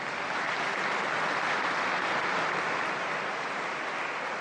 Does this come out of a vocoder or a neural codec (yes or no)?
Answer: no